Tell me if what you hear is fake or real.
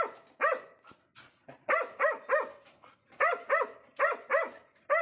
real